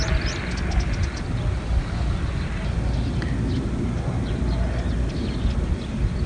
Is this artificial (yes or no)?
no